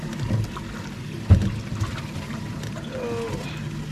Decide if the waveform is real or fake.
real